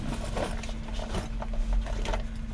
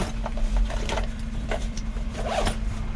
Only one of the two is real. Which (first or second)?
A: first